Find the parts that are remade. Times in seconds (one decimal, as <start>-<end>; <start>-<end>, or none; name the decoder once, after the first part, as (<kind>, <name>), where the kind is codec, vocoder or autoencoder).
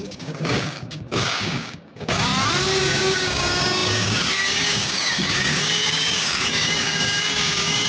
0.0-2.3 (codec, DAC); 2.8-7.9